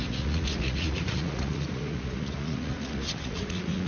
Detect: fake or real fake